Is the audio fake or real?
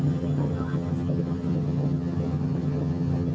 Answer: fake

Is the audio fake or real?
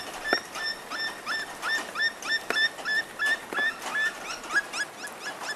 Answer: real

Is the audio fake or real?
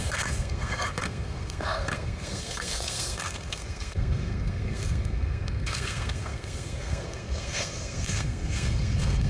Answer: fake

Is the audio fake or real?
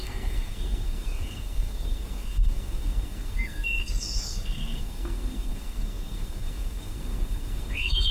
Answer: fake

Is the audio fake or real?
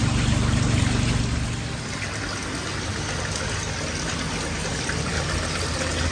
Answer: real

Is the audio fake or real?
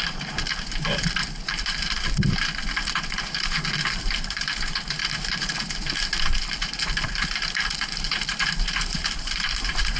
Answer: fake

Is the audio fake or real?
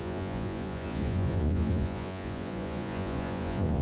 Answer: fake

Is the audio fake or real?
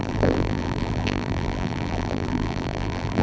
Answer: fake